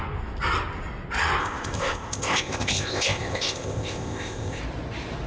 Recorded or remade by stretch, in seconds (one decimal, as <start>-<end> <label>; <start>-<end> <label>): 0.0-1.4 recorded; 1.4-4.6 remade; 4.6-5.3 recorded